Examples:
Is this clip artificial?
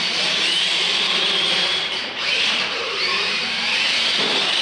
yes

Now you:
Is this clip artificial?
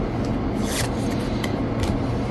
no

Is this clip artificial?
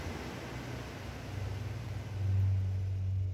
no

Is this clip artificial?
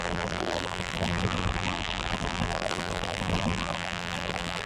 yes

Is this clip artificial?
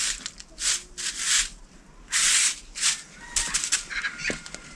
no